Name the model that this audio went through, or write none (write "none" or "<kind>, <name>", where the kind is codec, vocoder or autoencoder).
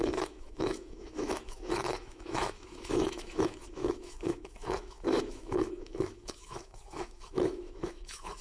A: autoencoder, DAC-VAE